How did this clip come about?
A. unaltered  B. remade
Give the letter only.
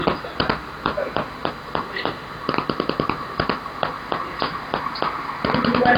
A